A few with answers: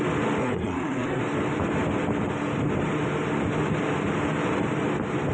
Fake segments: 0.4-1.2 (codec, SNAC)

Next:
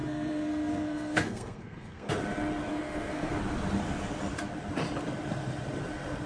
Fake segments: 0.0-2.1 (codec, SNAC); 2.7-3.3

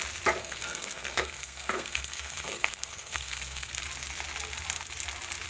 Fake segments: 0.4-3.7 (codec, SNAC)

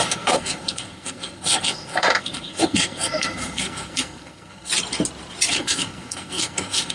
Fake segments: 0.0-4.7 (codec, SNAC); 5.5-6.9

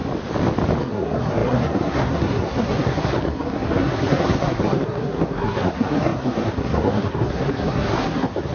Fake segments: 0.8-8.5 (codec, SNAC)

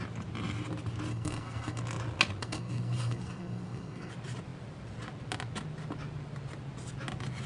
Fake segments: 1.1-1.8 (codec, SNAC); 2.4-4.1

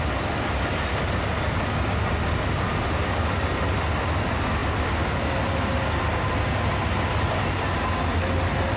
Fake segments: none